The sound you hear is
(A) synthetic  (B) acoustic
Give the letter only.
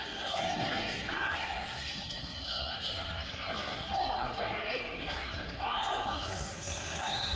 A